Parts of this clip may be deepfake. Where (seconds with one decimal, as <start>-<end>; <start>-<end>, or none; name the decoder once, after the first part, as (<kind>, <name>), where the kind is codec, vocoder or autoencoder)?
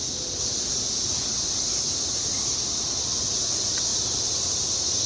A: 3.9-5.1 (vocoder, BigVGAN v2)